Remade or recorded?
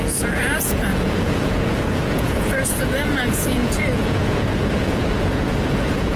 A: remade